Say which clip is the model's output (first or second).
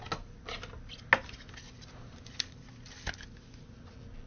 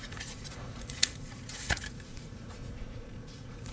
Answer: second